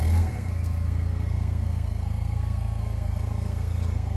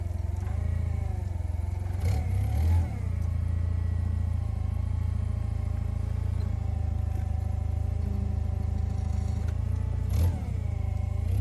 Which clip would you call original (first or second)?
second